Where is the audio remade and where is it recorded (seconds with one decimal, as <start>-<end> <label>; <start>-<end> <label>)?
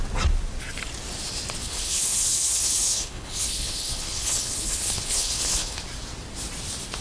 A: 0.0-1.6 recorded; 1.6-5.8 remade; 5.8-7.0 recorded